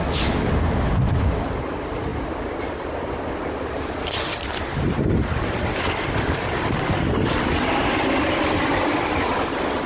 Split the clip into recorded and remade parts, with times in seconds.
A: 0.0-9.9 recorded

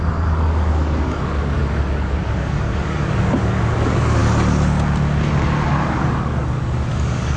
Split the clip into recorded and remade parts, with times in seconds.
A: 0.0-4.2 remade; 4.2-6.0 recorded; 6.0-7.4 remade